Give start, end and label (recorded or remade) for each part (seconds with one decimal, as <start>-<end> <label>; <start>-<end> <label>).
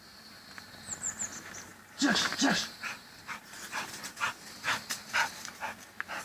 0.0-6.2 remade